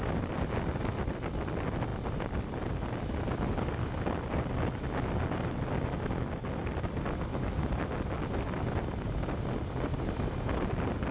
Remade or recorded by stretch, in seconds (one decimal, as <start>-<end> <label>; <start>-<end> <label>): 0.0-11.1 recorded